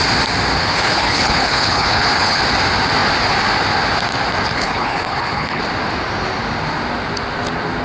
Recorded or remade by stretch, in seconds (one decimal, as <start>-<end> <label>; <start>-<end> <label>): 0.0-0.6 recorded; 0.6-2.4 remade; 2.4-4.5 recorded; 4.5-5.6 remade; 5.6-7.8 recorded